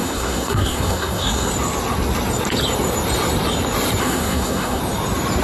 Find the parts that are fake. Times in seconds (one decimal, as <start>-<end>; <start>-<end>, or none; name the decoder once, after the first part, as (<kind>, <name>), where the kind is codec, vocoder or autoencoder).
0.0-1.5 (codec, SNAC); 4.0-4.8